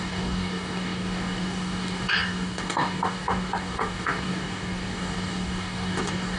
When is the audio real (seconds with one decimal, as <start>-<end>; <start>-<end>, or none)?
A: none